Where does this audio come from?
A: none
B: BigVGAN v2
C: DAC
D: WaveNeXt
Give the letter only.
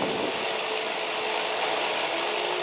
A